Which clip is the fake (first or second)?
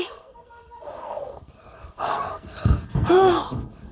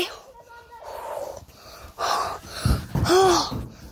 first